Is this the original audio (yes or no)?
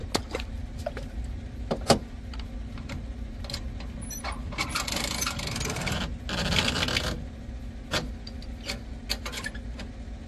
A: yes